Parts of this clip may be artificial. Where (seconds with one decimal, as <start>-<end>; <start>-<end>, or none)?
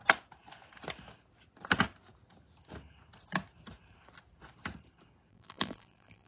5.3-6.3